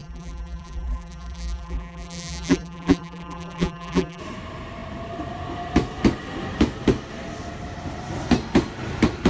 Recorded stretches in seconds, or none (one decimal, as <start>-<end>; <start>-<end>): 4.2-9.3